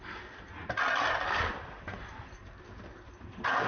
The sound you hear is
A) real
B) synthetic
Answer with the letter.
A